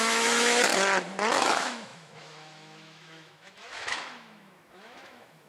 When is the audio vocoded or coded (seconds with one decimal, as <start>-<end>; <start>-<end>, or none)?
0.0-0.7; 1.3-5.5